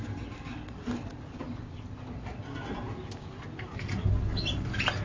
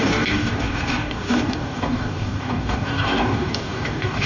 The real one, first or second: first